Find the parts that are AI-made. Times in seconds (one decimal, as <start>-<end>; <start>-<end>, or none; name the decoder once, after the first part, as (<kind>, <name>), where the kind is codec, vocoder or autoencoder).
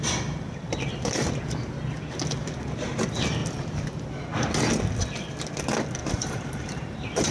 3.4-4.2 (vocoder, BigVGAN v2); 6.0-7.3